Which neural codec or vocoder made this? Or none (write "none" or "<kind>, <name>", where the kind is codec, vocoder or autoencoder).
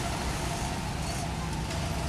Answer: none